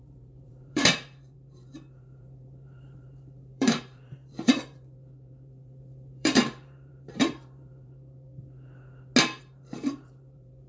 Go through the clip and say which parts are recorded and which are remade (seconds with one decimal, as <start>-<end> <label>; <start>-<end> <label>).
0.0-8.3 remade; 8.3-9.4 recorded; 9.4-10.7 remade